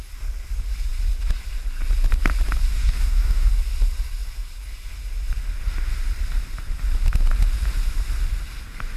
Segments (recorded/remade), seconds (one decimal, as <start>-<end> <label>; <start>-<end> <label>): 0.0-2.7 recorded; 2.7-3.5 remade; 3.5-9.0 recorded